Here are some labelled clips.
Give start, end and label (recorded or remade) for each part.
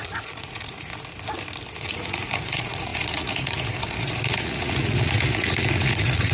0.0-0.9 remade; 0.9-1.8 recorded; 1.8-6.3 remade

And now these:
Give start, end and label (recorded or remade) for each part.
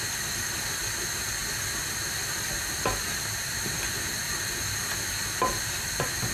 0.0-6.3 recorded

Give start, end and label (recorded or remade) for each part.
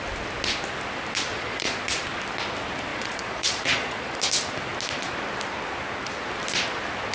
0.0-1.3 recorded; 1.3-1.8 remade; 1.8-2.9 recorded; 2.9-4.2 remade; 4.2-7.1 recorded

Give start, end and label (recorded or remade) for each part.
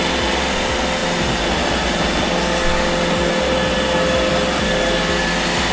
0.0-5.7 recorded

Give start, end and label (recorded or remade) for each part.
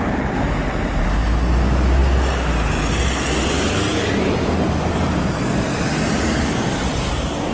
0.0-7.5 recorded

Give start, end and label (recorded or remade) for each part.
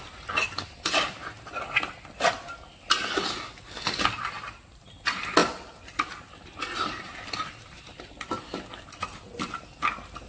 0.0-10.3 recorded